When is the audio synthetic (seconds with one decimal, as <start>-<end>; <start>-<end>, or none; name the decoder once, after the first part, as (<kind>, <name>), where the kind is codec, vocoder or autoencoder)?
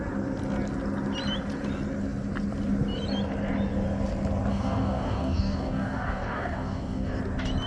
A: 4.5-7.2 (codec, DAC)